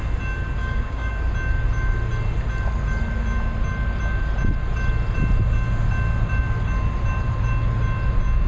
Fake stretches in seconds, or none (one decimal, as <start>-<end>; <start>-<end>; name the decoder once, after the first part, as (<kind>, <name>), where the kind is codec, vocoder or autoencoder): 0.6-1.1 (codec, DAC)